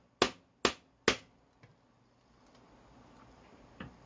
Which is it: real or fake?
real